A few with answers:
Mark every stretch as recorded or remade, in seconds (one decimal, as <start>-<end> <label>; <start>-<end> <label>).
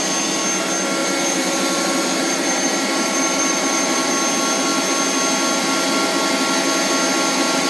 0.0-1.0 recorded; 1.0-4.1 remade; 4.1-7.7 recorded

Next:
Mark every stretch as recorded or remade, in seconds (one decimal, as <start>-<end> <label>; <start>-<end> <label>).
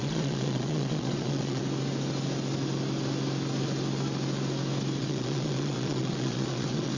0.0-1.6 remade; 1.6-5.0 recorded; 5.0-7.0 remade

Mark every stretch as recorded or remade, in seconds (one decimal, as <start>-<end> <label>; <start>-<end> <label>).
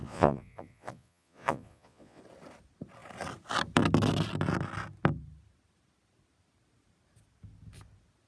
0.0-2.2 remade; 2.2-8.3 recorded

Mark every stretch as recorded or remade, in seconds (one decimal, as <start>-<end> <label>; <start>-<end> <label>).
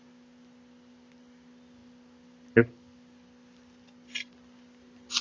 0.0-5.2 recorded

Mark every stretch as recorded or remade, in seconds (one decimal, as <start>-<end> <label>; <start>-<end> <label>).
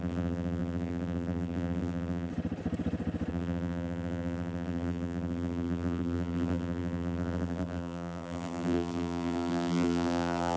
0.0-2.3 remade; 2.3-3.3 recorded; 3.3-10.6 remade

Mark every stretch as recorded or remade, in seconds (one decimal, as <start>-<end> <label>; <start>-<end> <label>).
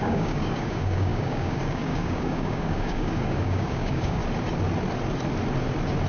0.0-4.2 remade; 4.2-6.1 recorded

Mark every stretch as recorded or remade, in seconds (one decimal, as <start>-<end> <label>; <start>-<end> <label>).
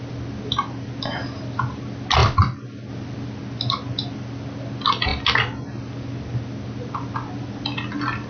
0.0-8.3 recorded